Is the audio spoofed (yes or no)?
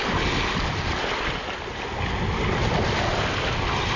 no